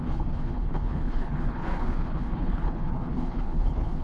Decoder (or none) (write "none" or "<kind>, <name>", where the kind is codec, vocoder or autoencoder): codec, HILCodec